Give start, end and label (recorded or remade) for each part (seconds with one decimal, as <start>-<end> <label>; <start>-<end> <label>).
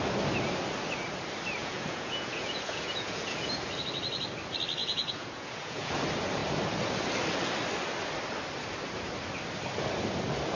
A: 0.0-1.6 recorded; 1.6-3.7 remade; 3.7-4.8 recorded; 4.8-5.9 remade; 5.9-10.5 recorded